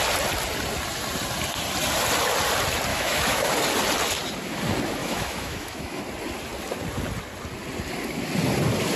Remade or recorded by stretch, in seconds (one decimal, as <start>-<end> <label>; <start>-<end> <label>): 0.0-2.9 recorded; 2.9-3.5 remade; 3.5-5.0 recorded; 5.0-6.0 remade; 6.0-9.0 recorded